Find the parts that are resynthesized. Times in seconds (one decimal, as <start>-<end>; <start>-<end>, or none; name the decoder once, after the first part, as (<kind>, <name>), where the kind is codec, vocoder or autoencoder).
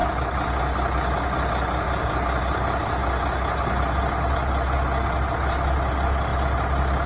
none